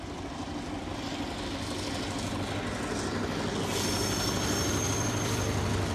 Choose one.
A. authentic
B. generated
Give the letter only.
A